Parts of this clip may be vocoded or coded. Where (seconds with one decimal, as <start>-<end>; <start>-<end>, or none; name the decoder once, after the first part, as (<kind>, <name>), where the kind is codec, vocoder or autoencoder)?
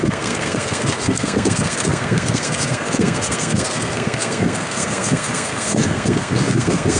0.0-7.0 (codec, SNAC)